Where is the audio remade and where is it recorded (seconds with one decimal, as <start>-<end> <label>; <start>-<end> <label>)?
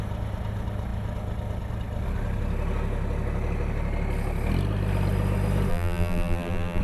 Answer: 0.0-5.7 recorded; 5.7-6.8 remade